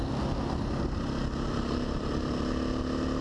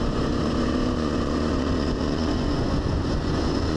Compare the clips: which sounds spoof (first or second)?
second